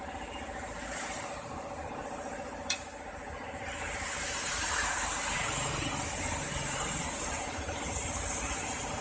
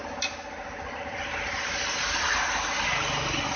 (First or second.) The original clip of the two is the second